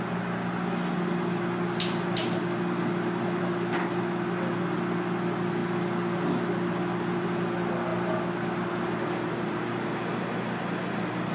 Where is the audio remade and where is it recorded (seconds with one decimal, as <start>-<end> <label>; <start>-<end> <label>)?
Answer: 0.0-11.3 recorded